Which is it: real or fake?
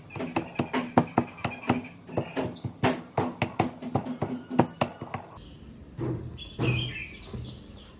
real